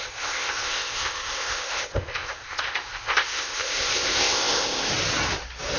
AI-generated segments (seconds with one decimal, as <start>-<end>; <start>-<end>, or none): 0.0-4.9